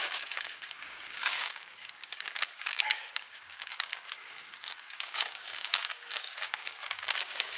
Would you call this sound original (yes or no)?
no